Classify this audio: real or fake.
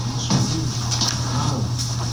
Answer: real